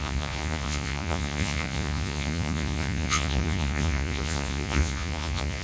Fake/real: fake